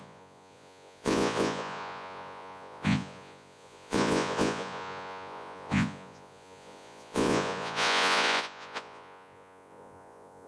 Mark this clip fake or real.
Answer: fake